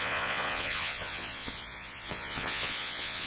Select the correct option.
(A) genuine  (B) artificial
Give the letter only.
B